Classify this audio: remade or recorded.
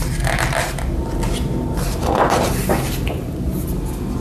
recorded